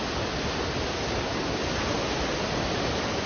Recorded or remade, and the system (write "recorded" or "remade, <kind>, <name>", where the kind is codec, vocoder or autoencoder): recorded